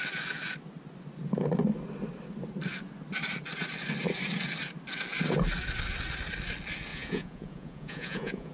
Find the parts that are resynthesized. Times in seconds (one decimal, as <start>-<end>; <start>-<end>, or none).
6.9-8.5